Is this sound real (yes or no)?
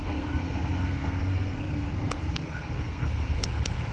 no